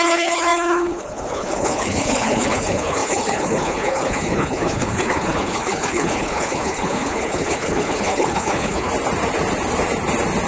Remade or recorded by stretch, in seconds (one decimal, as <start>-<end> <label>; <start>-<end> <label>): 0.0-8.9 remade; 8.9-10.5 recorded